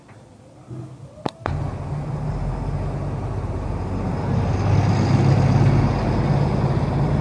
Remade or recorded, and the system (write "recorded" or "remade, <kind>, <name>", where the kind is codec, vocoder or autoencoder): recorded